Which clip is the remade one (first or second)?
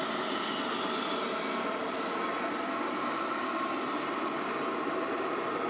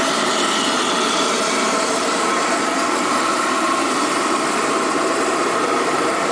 second